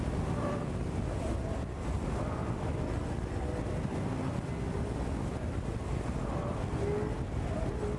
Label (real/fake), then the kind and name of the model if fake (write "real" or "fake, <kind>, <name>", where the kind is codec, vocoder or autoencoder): real